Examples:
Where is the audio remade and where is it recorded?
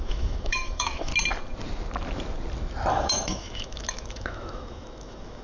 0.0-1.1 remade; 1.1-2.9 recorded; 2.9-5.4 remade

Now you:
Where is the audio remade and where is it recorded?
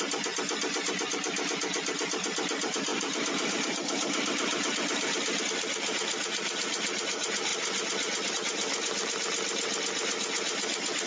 0.0-11.1 recorded